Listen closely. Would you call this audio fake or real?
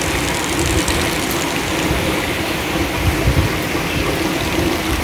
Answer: real